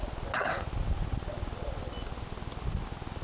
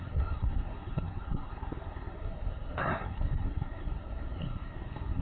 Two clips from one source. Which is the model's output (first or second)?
second